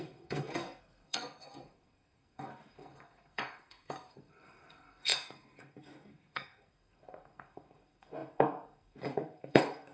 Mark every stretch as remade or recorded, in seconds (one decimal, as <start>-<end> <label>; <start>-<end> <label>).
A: 0.0-9.9 remade